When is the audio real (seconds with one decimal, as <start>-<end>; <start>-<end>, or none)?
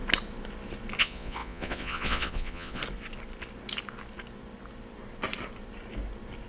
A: 0.0-1.0; 2.8-6.5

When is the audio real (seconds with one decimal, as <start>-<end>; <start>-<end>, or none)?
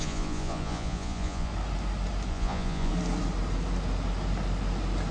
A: 1.5-2.3; 2.9-5.1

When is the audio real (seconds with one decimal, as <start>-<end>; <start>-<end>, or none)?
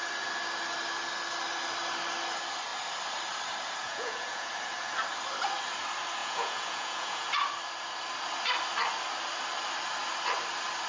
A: 0.0-3.8; 4.5-6.2; 7.2-10.9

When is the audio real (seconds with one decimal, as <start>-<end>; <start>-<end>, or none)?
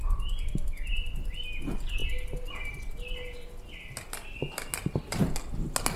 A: 0.0-6.0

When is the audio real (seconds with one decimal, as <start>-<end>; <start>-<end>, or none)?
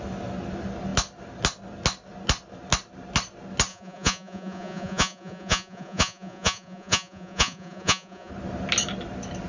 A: 0.0-3.7; 8.3-9.5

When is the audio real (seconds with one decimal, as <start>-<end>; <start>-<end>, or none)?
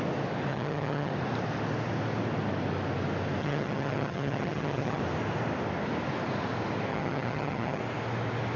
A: 0.0-0.5; 1.1-3.4; 5.0-6.9; 7.8-8.6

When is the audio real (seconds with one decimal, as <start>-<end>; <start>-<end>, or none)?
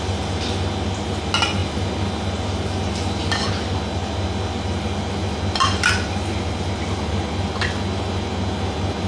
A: 0.0-9.1